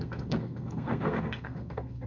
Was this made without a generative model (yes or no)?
no